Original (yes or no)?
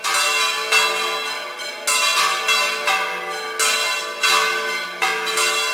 yes